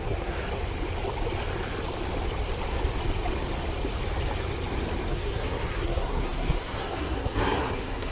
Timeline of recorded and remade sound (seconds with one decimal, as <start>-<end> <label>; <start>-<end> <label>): 0.0-0.4 remade; 0.4-5.1 recorded; 5.1-8.1 remade